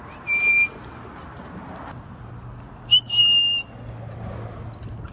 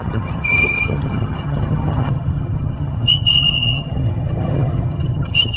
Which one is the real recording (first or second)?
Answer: first